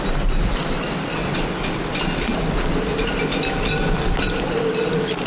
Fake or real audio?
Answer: real